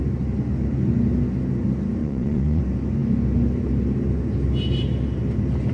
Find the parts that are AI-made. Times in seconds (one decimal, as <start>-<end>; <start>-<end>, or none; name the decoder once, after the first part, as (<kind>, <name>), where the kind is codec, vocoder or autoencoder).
2.0-2.6 (vocoder, Vocos)